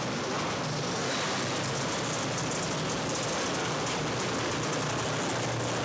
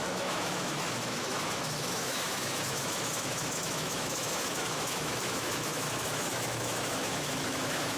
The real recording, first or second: first